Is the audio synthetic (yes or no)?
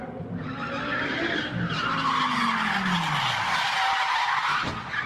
no